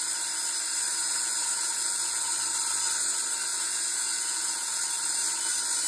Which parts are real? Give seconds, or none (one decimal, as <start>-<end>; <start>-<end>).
0.0-0.9; 2.3-3.5; 4.8-5.9

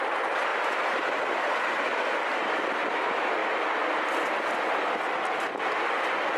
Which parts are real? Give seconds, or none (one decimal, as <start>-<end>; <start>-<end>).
0.0-0.5; 1.8-2.4; 2.9-6.4

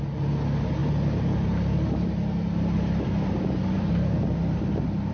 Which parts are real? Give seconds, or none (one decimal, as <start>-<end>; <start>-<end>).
0.0-5.1

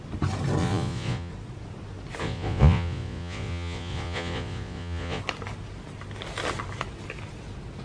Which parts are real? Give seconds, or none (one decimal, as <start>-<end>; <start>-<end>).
0.0-0.6; 1.3-2.2; 5.2-7.8

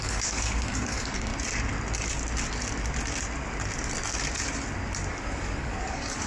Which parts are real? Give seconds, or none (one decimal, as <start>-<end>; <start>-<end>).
1.3-5.1

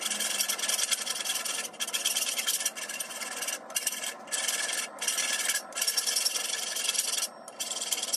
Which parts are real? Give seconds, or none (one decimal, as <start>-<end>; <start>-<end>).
0.0-1.3; 6.2-8.2